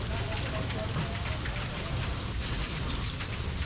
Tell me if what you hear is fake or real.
real